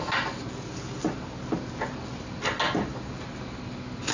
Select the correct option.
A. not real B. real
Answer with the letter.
B